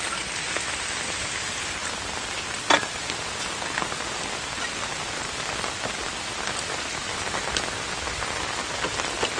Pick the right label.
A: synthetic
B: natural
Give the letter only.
B